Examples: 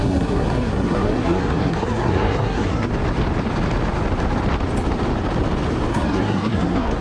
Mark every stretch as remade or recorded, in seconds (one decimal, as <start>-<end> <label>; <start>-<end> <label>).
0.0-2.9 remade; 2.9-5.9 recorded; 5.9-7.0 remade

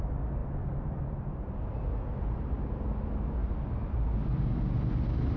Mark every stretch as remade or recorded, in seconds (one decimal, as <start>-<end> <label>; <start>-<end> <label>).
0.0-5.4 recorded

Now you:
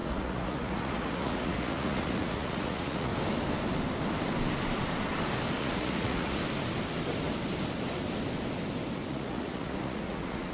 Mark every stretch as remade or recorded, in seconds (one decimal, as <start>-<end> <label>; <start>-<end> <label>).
0.0-3.1 remade; 3.1-5.6 recorded; 5.6-6.4 remade; 6.4-9.1 recorded; 9.1-10.5 remade

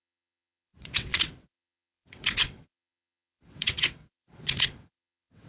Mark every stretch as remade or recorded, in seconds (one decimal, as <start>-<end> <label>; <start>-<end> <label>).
0.0-5.5 remade

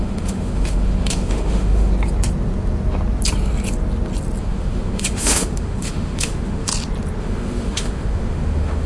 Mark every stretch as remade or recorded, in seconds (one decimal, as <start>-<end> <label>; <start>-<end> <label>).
0.0-1.9 remade; 1.9-4.4 recorded; 4.4-6.7 remade; 6.7-7.2 recorded; 7.2-8.9 remade

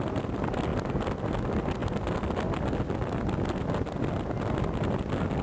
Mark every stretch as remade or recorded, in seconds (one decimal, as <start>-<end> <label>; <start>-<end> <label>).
0.0-5.4 recorded

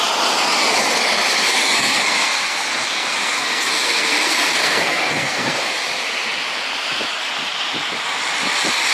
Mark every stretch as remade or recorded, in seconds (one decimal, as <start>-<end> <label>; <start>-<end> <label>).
0.0-1.4 recorded; 1.4-5.7 remade; 5.7-8.9 recorded

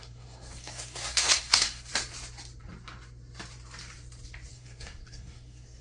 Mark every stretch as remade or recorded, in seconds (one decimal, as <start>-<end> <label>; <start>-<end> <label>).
0.0-1.9 remade; 1.9-4.5 recorded; 4.5-5.8 remade